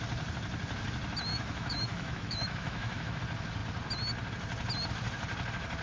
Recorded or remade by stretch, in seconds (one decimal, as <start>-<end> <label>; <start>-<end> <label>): 0.0-1.3 recorded; 1.3-3.2 remade; 3.2-5.8 recorded